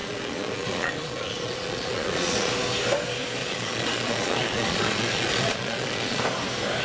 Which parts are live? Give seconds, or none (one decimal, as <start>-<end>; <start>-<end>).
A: 2.5-3.4; 6.2-6.8